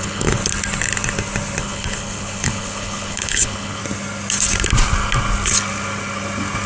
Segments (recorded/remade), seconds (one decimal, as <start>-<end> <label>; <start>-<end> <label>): 0.0-0.4 remade; 0.4-1.6 recorded; 1.6-3.8 remade; 3.8-6.7 recorded